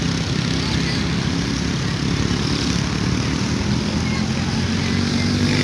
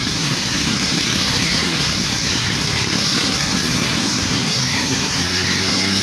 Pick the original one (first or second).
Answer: first